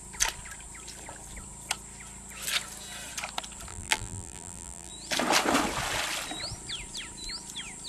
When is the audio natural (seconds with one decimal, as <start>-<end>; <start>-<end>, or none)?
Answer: 0.0-3.7; 4.9-7.9